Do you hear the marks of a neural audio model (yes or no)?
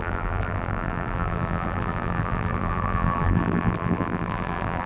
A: yes